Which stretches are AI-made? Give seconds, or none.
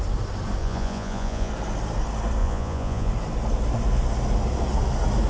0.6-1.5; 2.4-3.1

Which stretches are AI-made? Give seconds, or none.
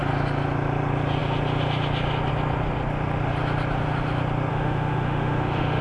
4.5-5.8